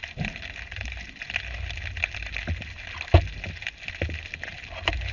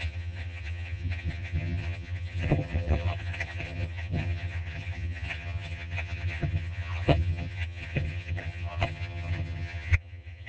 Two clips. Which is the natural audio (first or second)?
first